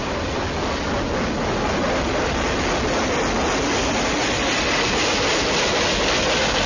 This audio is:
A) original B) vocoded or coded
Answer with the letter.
A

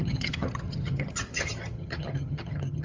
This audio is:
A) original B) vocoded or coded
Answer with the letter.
B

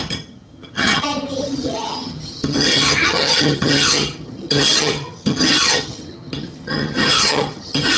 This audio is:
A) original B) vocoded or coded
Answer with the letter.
B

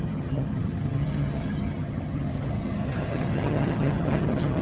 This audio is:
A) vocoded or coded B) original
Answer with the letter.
A